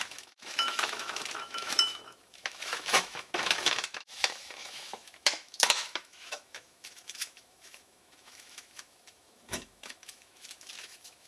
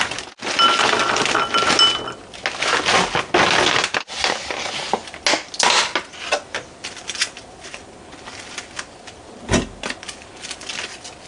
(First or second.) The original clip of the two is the second